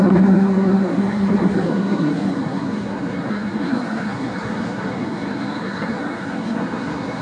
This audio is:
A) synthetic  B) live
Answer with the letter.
A